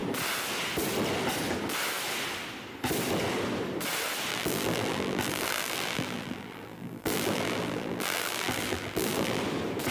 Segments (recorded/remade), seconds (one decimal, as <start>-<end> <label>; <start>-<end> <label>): 0.0-4.3 recorded; 4.3-9.4 remade; 9.4-9.9 recorded